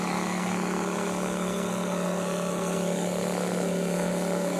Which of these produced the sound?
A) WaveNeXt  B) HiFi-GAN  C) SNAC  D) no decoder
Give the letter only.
C